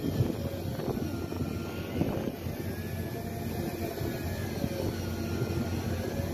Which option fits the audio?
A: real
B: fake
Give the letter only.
A